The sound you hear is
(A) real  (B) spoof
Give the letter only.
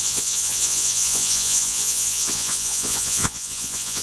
B